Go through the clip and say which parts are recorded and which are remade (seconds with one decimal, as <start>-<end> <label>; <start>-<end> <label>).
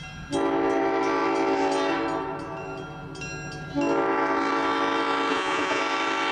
0.0-5.3 recorded; 5.3-5.8 remade; 5.8-6.3 recorded